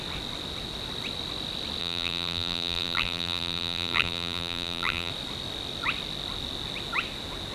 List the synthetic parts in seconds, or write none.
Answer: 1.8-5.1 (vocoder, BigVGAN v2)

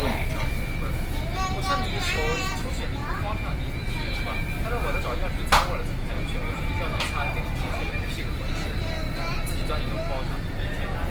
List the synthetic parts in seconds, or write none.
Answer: 6.6-8.9 (vocoder, BigVGAN v2)

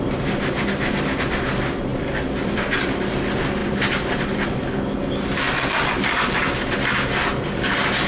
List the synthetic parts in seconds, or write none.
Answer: 1.9-3.1 (vocoder, BigVGAN v2)

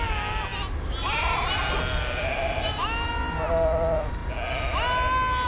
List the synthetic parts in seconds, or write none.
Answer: none

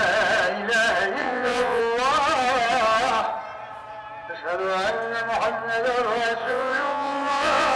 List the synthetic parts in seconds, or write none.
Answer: 1.2-1.8 (vocoder, WaveNeXt); 6.4-7.8

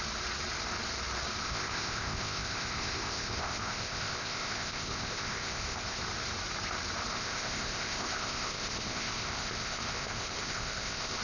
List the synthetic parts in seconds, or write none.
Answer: 1.4-6.0 (codec, ZipCodec); 7.1-11.2

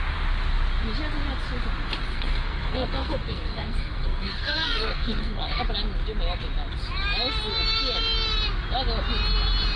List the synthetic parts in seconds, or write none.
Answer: 2.1-5.6 (codec, SNAC)

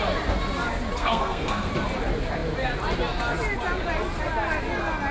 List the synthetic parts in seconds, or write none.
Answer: 1.0-1.7 (codec, SNAC)